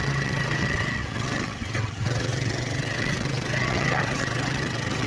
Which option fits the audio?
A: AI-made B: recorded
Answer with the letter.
A